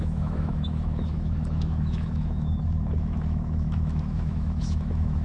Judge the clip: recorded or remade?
remade